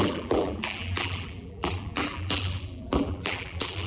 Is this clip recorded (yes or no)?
no